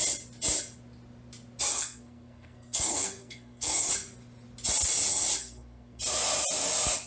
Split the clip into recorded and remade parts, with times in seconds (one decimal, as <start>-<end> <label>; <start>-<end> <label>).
0.0-1.7 recorded; 1.7-3.9 remade; 3.9-5.4 recorded; 5.4-6.0 remade; 6.0-7.1 recorded